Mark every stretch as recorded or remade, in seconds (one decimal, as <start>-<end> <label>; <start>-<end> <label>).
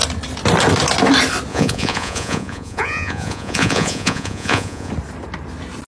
0.0-1.5 recorded; 1.5-4.9 remade; 4.9-6.0 recorded